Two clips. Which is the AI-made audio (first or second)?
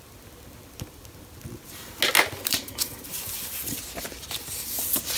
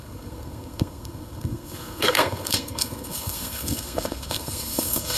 second